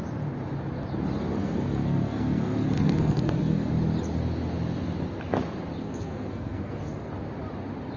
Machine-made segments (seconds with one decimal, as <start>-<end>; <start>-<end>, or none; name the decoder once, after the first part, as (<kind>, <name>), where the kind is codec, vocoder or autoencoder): 1.4-3.7 (codec, SNAC); 5.8-7.1